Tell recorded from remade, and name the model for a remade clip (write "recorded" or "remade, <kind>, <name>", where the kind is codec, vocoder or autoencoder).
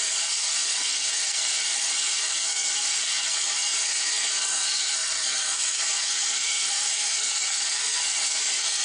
remade, codec, SNAC